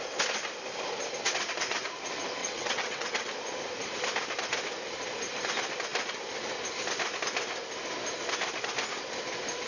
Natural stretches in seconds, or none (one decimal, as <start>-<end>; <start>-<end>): 0.0-2.4; 3.3-9.7